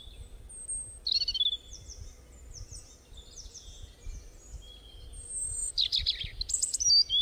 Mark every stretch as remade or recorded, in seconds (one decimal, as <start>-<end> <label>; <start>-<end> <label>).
0.0-5.6 recorded; 5.6-6.2 remade; 6.2-7.2 recorded